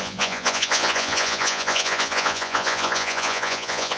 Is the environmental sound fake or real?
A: fake